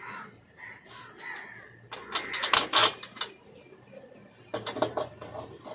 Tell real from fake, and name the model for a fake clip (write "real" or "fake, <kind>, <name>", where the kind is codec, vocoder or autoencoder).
real